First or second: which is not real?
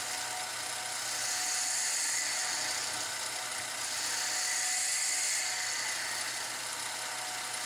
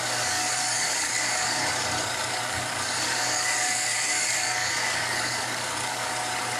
second